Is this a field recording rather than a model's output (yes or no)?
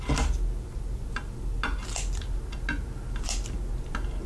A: yes